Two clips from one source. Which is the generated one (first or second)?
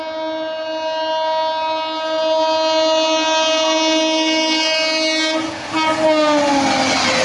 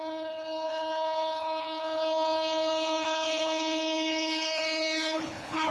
second